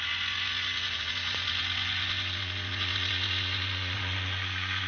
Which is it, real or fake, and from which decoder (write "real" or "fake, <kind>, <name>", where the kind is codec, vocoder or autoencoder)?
fake, vocoder, Vocos